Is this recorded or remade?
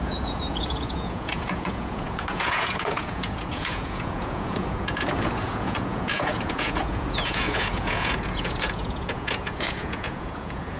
remade